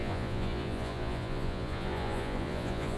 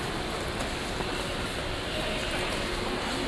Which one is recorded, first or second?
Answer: second